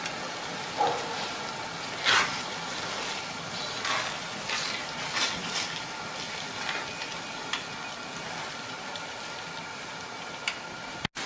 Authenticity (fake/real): real